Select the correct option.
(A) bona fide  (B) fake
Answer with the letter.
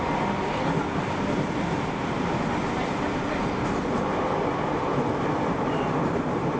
A